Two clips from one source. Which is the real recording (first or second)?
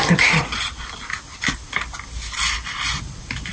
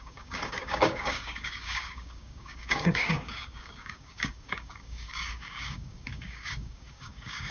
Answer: first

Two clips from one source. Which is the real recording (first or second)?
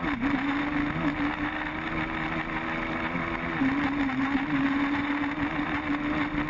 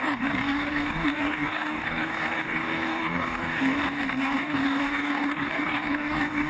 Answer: first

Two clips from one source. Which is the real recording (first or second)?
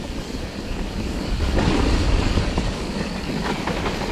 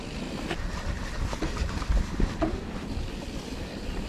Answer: second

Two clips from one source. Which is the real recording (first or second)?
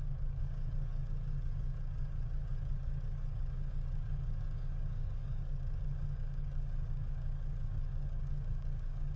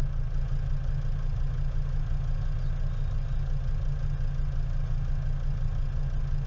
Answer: second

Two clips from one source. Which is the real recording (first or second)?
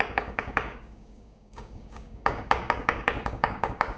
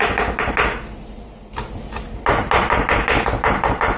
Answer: second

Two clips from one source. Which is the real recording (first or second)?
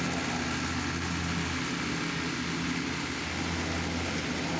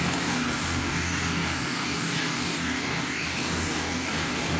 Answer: first